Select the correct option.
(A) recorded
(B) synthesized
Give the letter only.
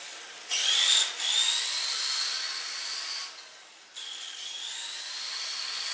A